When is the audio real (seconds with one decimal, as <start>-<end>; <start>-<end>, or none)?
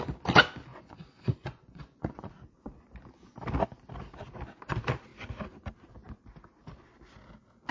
0.0-0.7; 2.3-7.7